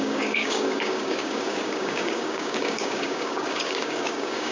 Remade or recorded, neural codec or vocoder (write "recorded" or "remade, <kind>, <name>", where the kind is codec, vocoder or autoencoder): remade, codec, DAC